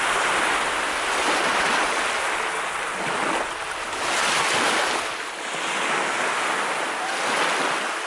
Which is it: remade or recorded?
recorded